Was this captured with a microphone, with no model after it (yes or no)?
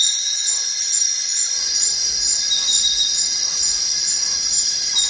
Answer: yes